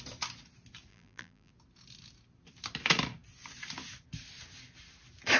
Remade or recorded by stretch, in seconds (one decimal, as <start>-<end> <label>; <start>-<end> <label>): 0.0-0.9 recorded; 0.9-1.5 remade; 1.5-5.4 recorded